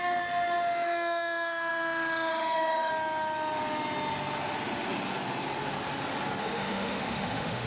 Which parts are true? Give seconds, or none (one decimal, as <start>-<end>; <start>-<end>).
2.9-6.4